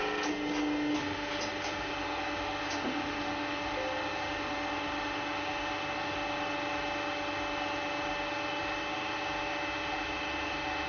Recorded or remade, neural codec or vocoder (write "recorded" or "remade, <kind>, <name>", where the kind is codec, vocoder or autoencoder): recorded